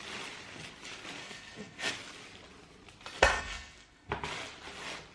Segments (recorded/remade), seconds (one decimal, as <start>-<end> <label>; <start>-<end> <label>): 0.0-1.2 recorded; 1.2-1.9 remade; 1.9-3.3 recorded; 3.3-4.1 remade; 4.1-5.1 recorded